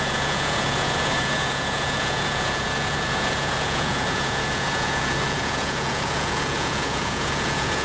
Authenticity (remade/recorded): remade